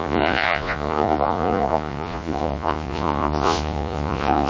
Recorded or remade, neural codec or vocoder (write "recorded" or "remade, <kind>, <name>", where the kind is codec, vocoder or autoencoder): remade, vocoder, Vocos